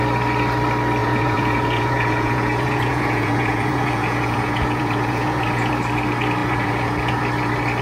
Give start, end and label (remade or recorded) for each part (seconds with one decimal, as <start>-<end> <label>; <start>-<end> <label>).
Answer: 0.0-1.0 recorded; 1.0-5.7 remade; 5.7-6.4 recorded; 6.4-7.2 remade; 7.2-7.8 recorded

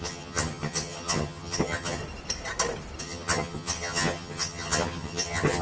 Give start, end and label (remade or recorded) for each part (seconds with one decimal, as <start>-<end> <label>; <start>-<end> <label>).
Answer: 0.0-2.0 remade; 2.0-3.0 recorded; 3.0-5.6 remade

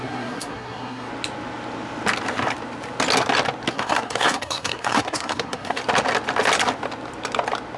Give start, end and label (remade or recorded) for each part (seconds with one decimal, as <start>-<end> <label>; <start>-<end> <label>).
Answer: 0.0-1.1 remade; 1.1-3.7 recorded; 3.7-5.8 remade; 5.8-7.8 recorded

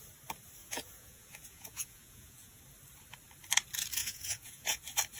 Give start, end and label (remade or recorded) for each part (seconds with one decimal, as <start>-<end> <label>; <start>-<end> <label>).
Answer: 0.0-0.6 recorded; 0.6-2.6 remade; 2.6-4.0 recorded; 4.0-4.8 remade; 4.8-5.2 recorded

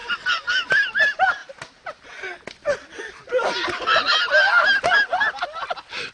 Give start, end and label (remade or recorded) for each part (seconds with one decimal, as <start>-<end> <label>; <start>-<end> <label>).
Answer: 0.0-6.1 recorded

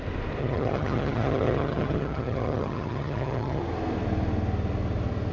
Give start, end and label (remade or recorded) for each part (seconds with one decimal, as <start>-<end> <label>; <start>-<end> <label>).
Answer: 0.0-0.4 recorded; 0.4-3.6 remade; 3.6-5.3 recorded

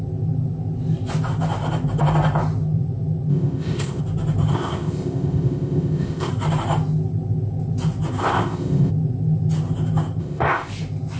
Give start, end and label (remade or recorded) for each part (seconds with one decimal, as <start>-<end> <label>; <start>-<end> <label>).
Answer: 0.0-3.3 recorded; 3.3-4.0 remade; 4.0-4.5 recorded; 4.5-6.3 remade; 6.3-8.2 recorded; 8.2-8.9 remade; 8.9-10.2 recorded; 10.2-10.7 remade; 10.7-11.2 recorded